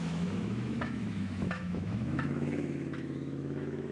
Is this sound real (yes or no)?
no